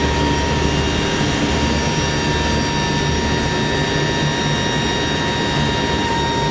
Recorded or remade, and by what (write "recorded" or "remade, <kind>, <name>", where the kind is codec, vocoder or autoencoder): recorded